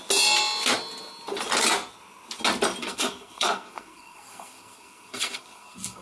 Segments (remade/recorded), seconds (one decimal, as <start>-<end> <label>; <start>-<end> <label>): 0.0-2.8 recorded; 2.8-6.0 remade